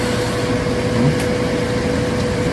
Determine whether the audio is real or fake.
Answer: real